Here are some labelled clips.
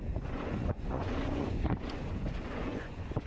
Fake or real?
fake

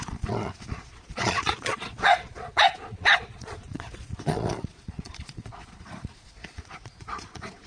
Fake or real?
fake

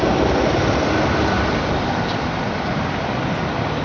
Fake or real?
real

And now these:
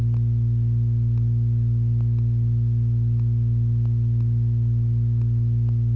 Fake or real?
real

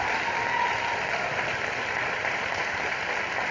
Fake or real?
real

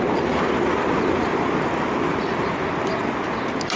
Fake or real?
real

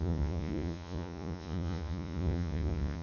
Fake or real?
fake